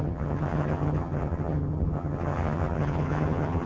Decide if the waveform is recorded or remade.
remade